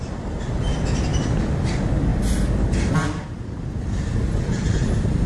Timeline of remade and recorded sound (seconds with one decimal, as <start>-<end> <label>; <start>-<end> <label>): 0.0-5.3 remade

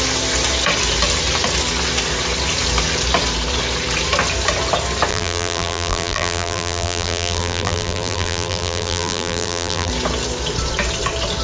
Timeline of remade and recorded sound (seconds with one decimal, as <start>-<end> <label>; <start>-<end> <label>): 0.0-5.1 recorded; 5.1-9.9 remade; 9.9-11.4 recorded

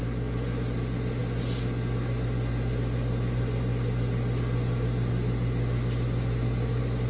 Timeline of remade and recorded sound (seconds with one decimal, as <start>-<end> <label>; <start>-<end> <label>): 0.0-7.1 recorded

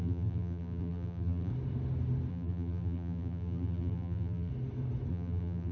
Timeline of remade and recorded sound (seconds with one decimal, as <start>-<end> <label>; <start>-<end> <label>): 0.0-1.5 remade; 1.5-2.3 recorded; 2.3-4.5 remade; 4.5-5.1 recorded; 5.1-5.7 remade

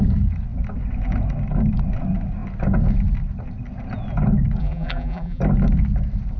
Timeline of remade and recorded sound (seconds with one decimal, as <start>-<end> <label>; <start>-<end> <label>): 0.0-4.6 recorded; 4.6-5.4 remade; 5.4-6.4 recorded

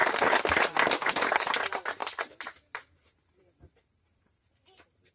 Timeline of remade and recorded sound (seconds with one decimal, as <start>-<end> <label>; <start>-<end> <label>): 0.0-2.0 recorded; 2.0-5.1 remade

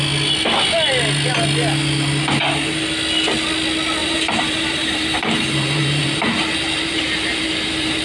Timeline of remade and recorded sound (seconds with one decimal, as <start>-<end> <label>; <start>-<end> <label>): 0.0-4.0 recorded; 4.0-8.0 remade